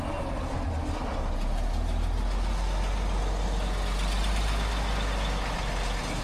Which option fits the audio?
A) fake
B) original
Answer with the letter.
B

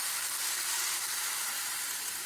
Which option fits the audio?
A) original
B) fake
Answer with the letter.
A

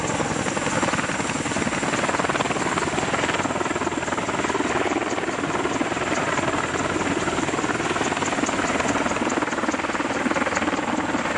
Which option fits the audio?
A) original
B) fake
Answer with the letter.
A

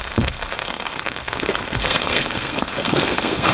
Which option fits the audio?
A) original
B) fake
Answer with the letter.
B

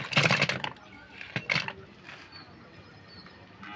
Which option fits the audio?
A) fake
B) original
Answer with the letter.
B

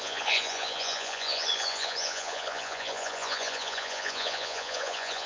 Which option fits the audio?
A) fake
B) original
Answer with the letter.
A